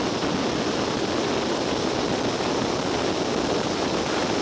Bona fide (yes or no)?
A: yes